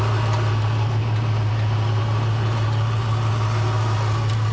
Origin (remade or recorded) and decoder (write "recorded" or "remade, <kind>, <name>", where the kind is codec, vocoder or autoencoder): recorded